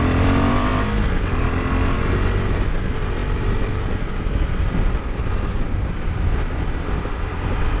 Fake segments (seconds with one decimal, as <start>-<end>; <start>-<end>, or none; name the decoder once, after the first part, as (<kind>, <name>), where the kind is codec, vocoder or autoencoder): 0.0-0.7 (vocoder, BigVGAN v2); 2.7-7.8